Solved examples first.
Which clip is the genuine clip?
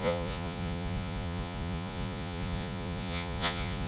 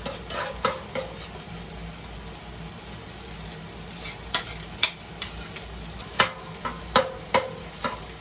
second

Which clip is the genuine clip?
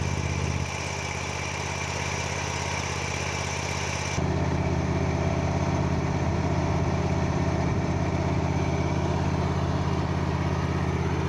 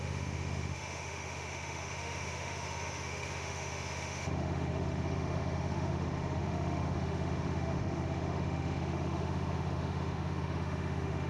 first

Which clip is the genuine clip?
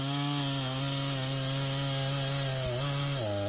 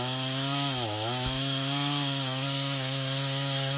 first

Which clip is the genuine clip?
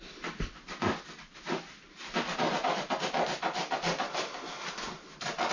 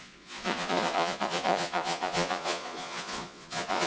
first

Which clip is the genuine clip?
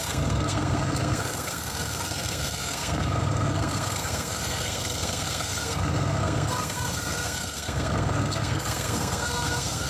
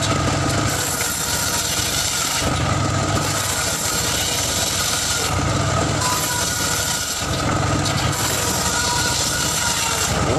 second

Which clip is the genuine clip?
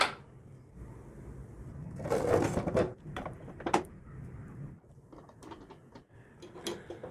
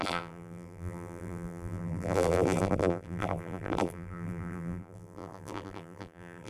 first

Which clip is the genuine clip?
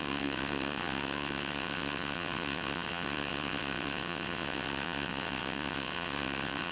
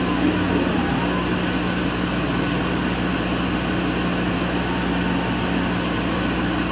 second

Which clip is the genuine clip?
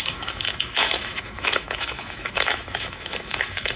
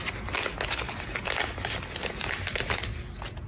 second